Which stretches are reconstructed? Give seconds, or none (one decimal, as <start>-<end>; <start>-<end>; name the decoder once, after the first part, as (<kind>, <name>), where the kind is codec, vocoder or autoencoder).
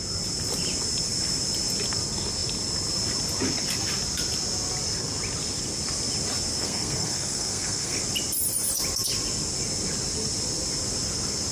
6.6-8.0 (codec, SNAC)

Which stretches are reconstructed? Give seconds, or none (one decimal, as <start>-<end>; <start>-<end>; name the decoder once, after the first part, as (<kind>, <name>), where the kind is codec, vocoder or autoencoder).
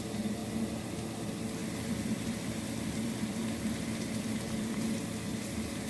1.6-5.1 (vocoder, BigVGAN v2)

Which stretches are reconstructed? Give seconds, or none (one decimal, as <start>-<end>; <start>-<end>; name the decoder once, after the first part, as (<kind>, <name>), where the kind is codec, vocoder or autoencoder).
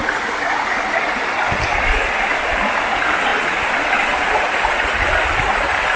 none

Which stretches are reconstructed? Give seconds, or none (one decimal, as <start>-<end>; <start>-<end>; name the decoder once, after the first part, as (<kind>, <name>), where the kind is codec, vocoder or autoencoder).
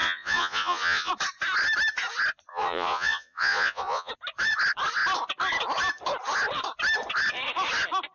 0.0-1.1 (vocoder, Vocos); 2.5-4.1